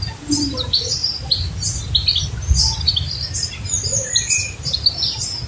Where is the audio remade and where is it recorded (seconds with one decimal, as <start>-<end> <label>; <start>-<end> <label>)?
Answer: 0.0-5.5 recorded